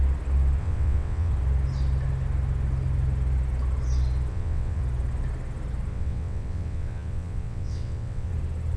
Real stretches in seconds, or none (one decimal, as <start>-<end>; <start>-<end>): 0.0-0.6; 1.3-4.3; 4.8-5.9; 8.3-8.8